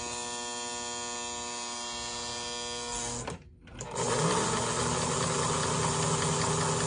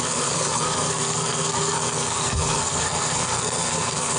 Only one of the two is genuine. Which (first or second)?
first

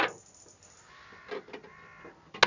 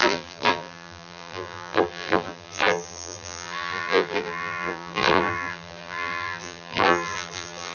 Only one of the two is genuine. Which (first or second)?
first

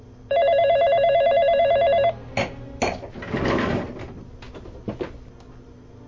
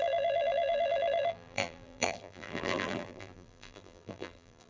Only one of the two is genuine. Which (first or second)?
first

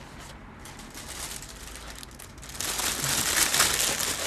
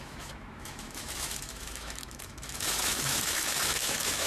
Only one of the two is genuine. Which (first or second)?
first